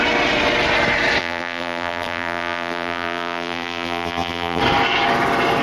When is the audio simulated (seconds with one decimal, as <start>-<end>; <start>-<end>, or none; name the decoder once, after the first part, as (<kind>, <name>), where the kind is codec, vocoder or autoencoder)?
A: 1.2-4.6 (vocoder, BigVGAN v2)